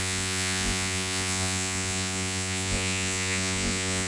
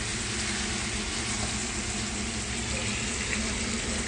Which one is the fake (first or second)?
first